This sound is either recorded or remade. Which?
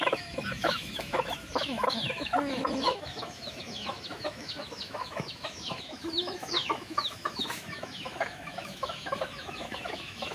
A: remade